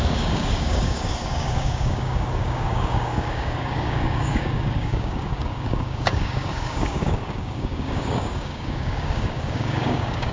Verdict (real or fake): fake